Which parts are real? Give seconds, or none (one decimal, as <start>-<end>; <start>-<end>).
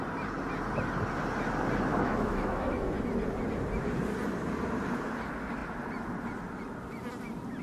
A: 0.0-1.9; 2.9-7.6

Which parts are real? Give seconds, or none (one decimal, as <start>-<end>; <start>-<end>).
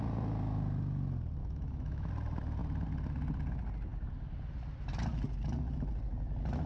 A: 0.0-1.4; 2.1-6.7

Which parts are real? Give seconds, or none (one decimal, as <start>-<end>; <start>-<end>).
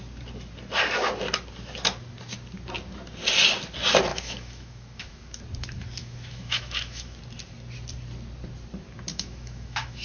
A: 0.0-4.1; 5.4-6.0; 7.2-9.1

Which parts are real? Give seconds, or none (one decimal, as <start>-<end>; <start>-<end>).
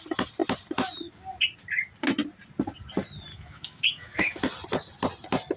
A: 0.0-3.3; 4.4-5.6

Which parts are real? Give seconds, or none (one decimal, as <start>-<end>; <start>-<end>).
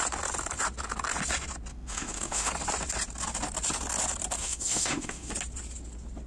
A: 0.0-1.7; 2.5-4.4; 5.3-6.3